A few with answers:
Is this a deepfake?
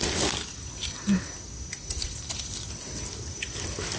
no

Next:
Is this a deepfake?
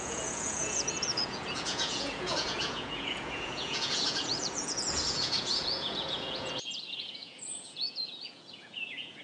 yes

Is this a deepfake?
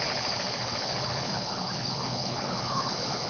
yes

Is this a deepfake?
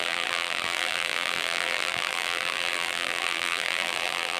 yes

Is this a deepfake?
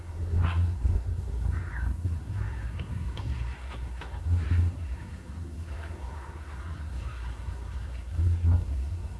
yes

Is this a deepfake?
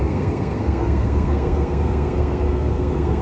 yes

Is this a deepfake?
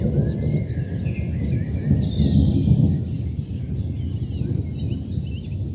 no